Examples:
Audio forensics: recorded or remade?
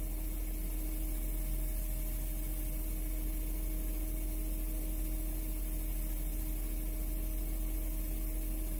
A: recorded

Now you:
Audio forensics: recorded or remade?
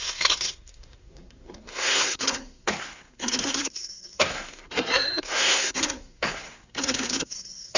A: remade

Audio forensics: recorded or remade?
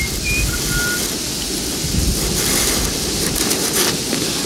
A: recorded